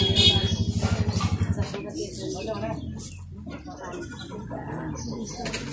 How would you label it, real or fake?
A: real